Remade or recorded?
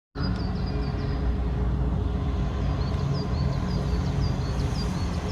recorded